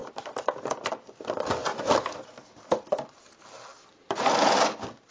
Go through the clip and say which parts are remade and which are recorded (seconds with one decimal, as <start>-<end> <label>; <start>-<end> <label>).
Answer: 0.0-5.1 recorded